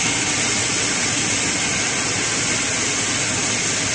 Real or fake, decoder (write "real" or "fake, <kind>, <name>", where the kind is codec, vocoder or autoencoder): real